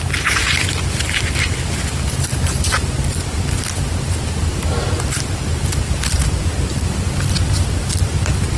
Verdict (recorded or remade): recorded